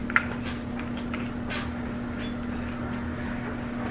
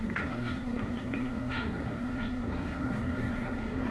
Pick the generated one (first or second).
second